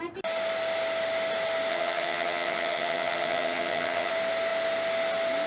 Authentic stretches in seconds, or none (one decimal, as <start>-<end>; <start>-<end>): 0.0-1.7; 4.1-5.5